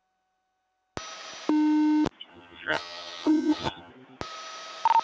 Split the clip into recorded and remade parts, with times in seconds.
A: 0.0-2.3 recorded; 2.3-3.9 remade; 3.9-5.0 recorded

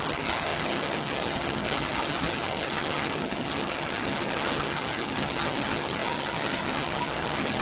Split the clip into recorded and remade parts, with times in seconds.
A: 0.0-7.6 remade